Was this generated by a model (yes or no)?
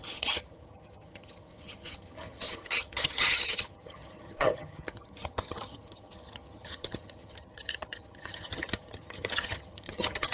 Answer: yes